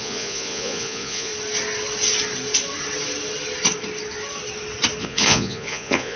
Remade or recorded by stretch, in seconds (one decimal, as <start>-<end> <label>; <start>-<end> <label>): 0.0-1.3 remade; 1.3-5.0 recorded; 5.0-6.2 remade